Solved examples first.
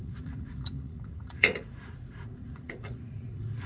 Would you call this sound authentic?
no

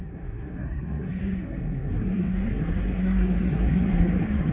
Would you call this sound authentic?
no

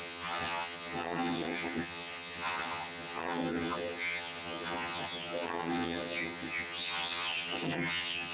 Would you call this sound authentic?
no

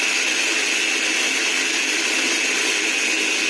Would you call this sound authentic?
yes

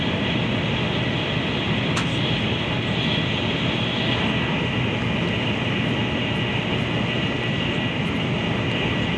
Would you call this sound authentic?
yes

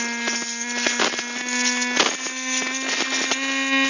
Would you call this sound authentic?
yes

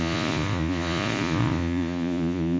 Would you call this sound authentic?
no